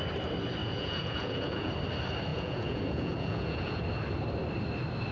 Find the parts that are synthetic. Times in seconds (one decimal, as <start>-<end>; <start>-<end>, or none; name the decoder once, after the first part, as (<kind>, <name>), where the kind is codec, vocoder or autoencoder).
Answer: 0.6-1.7 (vocoder, Vocos); 2.3-3.8